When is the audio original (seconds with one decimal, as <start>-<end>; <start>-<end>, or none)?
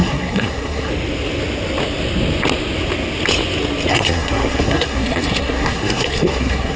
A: 0.9-3.9